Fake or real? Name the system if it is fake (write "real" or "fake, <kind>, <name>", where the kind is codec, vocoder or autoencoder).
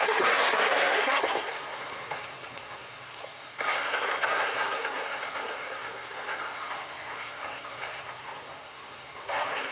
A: fake, codec, SNAC